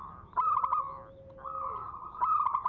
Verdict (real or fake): real